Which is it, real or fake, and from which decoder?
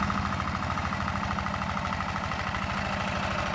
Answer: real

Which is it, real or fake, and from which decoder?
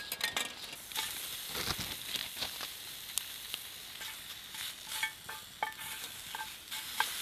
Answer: real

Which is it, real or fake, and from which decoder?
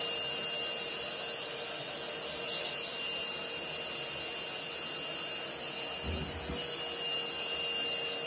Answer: real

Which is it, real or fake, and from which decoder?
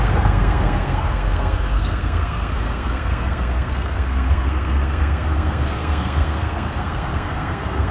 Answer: fake, codec, SNAC